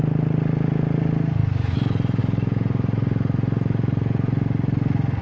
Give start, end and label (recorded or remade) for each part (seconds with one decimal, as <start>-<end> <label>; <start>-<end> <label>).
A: 0.0-5.2 recorded